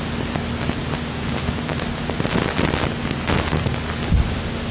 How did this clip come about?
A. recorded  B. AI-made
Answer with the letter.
A